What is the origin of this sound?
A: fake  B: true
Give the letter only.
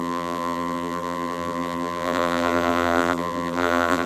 A